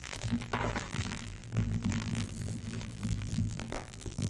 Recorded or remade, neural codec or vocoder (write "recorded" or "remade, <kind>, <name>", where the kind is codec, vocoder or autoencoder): remade, vocoder, BigVGAN v2